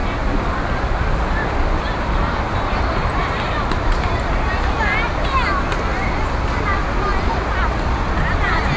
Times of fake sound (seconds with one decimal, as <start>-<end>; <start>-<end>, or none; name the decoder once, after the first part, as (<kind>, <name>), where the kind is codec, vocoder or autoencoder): none